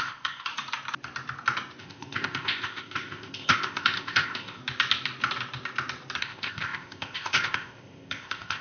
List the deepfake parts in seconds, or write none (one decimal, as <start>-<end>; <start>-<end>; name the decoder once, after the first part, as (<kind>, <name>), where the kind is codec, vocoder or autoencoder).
0.0-0.5 (codec, ZipCodec); 1.8-4.6; 6.2-8.6